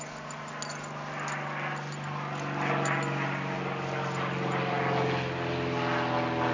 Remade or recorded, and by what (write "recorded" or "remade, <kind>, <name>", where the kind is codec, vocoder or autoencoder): recorded